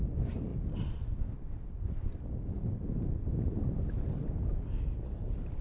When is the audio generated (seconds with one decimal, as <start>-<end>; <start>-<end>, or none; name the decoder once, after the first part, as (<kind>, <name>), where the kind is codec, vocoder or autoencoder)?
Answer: none